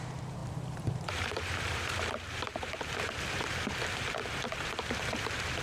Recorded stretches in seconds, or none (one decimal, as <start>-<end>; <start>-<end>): none